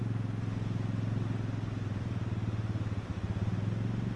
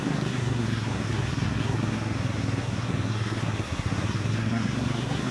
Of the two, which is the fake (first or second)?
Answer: second